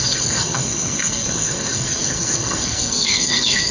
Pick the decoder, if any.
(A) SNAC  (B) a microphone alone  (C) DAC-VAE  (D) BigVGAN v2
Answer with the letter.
A